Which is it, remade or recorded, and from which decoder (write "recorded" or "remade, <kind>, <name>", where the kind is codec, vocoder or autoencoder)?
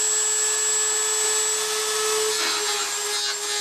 recorded